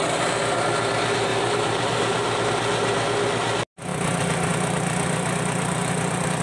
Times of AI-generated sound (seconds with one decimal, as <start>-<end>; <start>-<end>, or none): 1.3-2.5; 3.9-4.5